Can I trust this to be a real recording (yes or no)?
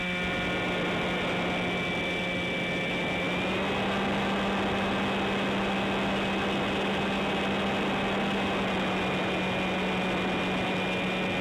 yes